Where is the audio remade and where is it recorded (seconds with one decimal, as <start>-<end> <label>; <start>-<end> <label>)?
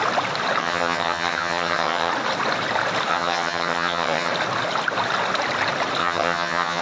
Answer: 0.0-0.6 recorded; 0.6-2.1 remade; 2.1-3.1 recorded; 3.1-4.3 remade; 4.3-6.0 recorded; 6.0-6.8 remade